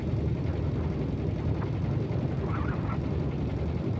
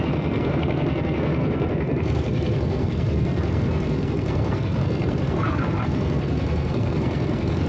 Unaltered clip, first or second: first